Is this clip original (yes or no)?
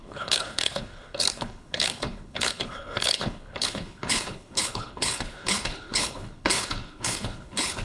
no